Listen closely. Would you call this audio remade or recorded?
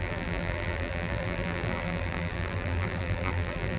remade